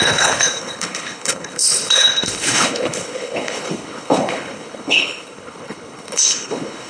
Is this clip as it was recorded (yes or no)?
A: no